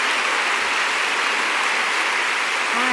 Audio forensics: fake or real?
real